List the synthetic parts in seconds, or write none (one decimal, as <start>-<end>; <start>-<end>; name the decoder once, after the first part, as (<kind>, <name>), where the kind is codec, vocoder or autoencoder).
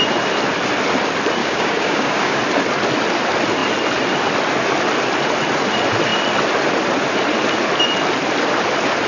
1.4-2.4 (codec, DAC)